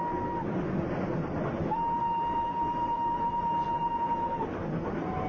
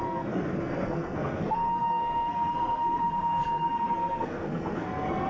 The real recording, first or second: first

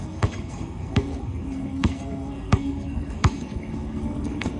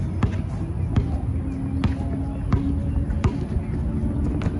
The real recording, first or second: second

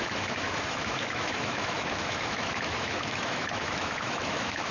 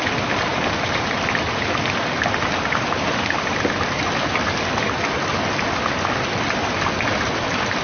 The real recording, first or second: second